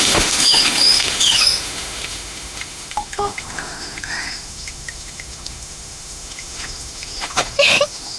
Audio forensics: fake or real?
fake